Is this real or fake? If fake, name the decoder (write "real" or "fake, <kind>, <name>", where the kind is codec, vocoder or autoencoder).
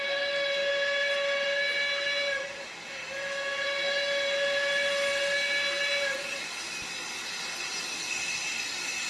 real